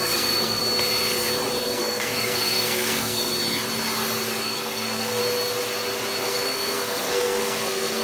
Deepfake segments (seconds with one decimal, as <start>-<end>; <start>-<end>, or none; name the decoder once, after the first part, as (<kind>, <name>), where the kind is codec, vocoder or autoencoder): 0.0-0.6 (codec, SNAC); 1.6-3.3; 4.4-5.2; 6.2-8.0